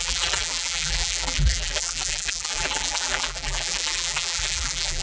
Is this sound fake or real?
fake